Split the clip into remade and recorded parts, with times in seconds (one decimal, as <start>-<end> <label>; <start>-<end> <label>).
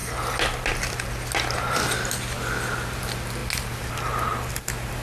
0.0-5.0 recorded